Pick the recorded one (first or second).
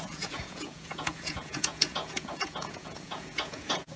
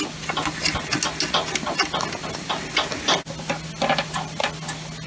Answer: second